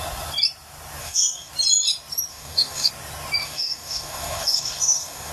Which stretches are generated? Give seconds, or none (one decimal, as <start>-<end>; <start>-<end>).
1.0-1.5; 2.3-2.9; 3.4-5.3